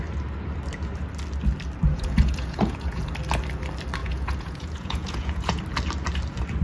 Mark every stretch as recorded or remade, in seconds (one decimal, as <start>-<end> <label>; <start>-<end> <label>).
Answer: 0.0-1.9 recorded; 1.9-3.1 remade; 3.1-4.0 recorded; 4.0-5.6 remade; 5.6-6.6 recorded